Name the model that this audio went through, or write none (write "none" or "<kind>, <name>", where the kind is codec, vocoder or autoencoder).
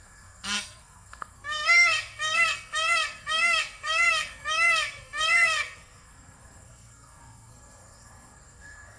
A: codec, SNAC